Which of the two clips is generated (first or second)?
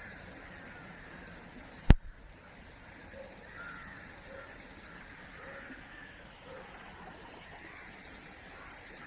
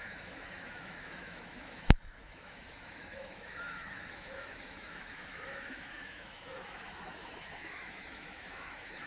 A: second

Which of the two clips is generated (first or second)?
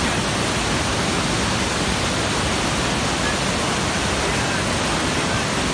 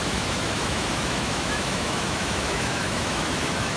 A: second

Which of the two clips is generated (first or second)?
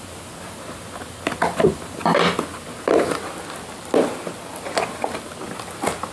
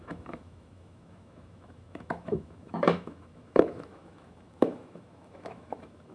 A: second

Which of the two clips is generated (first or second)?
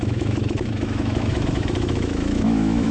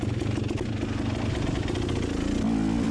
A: first